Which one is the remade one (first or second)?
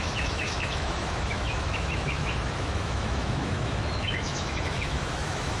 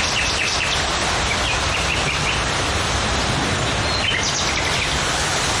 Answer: first